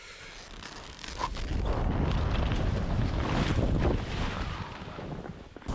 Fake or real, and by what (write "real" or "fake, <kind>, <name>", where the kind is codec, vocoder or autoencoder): real